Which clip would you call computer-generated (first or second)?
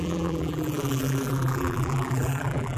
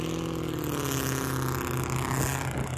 first